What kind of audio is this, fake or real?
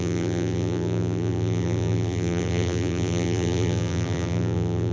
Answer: fake